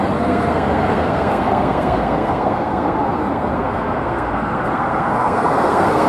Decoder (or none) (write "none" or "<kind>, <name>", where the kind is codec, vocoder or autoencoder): codec, SNAC